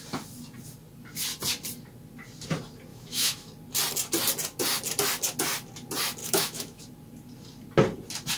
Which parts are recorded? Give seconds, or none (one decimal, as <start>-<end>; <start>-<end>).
0.0-2.9; 3.5-6.2; 6.8-8.4